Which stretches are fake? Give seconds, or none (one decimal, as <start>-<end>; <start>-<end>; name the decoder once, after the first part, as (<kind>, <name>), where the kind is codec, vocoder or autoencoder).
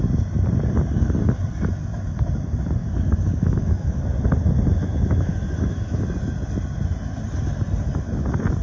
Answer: 2.8-4.0 (autoencoder, DAC-VAE); 4.8-6.0